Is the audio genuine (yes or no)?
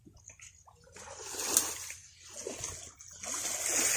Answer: yes